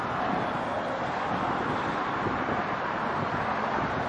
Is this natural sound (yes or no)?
yes